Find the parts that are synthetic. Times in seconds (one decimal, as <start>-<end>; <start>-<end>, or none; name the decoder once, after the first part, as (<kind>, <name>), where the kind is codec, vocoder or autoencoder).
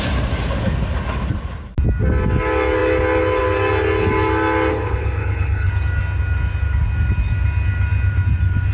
4.7-5.7 (codec, HILCodec)